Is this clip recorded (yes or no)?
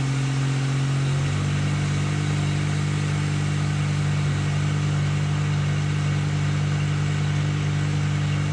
yes